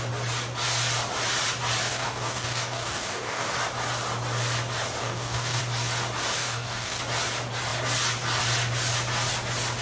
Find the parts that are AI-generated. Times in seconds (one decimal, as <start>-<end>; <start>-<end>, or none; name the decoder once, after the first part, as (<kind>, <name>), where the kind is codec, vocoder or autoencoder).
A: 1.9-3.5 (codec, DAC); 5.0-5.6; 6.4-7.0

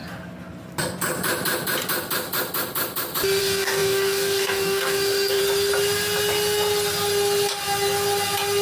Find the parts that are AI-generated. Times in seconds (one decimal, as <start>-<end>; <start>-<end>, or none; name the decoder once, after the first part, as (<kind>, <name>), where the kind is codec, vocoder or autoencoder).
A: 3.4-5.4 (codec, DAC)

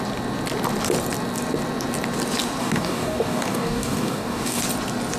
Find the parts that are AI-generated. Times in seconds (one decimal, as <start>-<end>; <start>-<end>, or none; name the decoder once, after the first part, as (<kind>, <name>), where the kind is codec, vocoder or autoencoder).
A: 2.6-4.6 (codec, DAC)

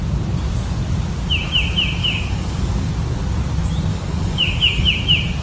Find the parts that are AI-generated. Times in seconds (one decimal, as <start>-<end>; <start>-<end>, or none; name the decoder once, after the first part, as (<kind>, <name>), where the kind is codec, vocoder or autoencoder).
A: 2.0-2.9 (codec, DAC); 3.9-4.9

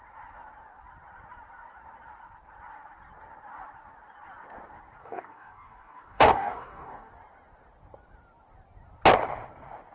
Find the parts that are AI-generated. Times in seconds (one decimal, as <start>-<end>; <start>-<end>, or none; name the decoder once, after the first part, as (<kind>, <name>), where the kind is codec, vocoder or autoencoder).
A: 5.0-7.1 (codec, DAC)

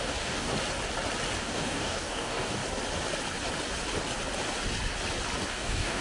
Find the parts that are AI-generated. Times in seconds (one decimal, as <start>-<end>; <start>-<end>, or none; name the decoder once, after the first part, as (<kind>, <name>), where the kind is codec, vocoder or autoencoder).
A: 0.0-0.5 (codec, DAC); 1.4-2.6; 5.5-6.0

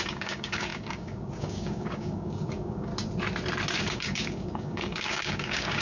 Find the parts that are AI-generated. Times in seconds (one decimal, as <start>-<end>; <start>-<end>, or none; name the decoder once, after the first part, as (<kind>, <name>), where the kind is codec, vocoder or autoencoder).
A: 0.0-2.9 (codec, DAC); 3.9-5.8

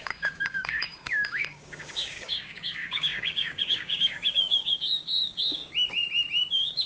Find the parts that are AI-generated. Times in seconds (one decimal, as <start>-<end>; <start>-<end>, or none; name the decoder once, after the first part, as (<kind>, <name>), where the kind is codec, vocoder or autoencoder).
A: 0.0-5.6 (codec, DAC); 6.5-6.9